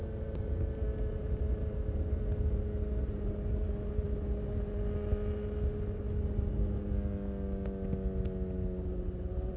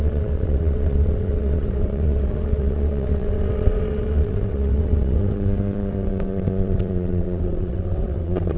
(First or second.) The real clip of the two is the first